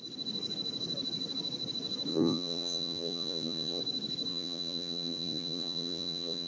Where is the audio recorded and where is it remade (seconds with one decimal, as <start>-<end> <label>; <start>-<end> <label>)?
0.0-2.1 recorded; 2.1-3.8 remade; 3.8-4.3 recorded; 4.3-6.5 remade